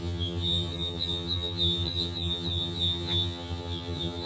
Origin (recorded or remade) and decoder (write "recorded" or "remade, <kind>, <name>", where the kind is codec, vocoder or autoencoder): remade, vocoder, HiFi-GAN